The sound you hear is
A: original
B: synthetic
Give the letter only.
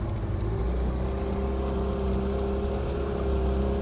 A